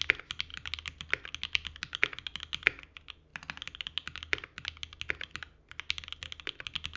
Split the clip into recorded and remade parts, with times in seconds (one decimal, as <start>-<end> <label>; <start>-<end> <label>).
0.0-7.0 recorded